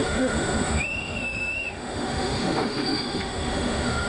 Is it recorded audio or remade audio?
remade